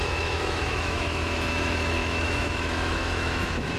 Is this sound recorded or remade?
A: remade